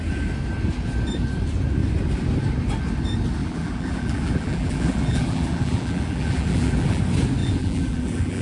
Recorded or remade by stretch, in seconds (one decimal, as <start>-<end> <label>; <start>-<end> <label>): 0.0-3.4 recorded; 3.4-7.0 remade; 7.0-7.4 recorded; 7.4-8.4 remade